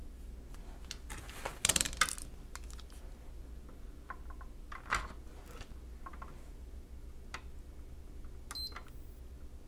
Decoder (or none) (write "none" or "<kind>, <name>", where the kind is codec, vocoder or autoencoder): none